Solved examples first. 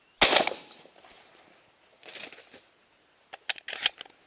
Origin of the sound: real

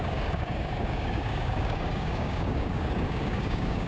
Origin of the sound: fake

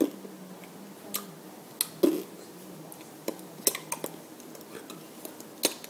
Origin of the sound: real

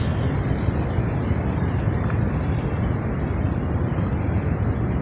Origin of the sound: real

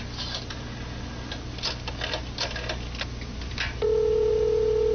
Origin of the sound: real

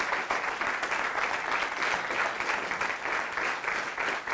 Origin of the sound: real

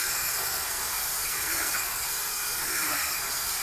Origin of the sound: fake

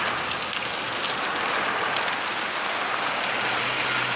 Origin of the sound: real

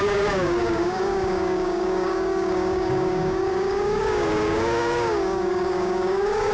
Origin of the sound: fake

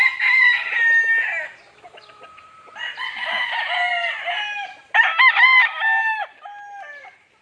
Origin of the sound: real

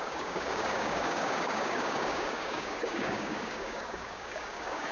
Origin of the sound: fake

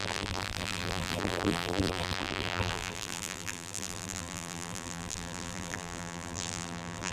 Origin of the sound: fake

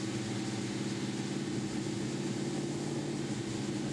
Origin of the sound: real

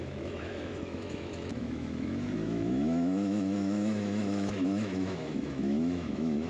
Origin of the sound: fake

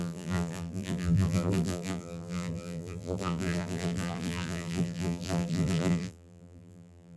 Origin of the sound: fake